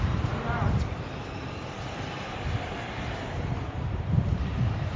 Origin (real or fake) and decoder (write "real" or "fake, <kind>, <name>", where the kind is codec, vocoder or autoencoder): fake, vocoder, BigVGAN v2